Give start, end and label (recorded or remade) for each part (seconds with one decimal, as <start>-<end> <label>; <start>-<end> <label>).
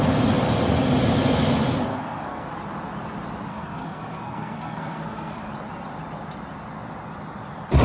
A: 0.0-1.9 recorded; 1.9-2.5 remade; 2.5-3.5 recorded; 3.5-5.5 remade; 5.5-7.8 recorded